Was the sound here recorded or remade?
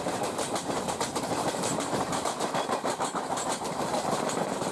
remade